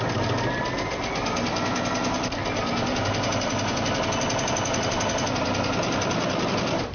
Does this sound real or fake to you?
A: real